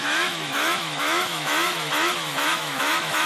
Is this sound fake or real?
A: fake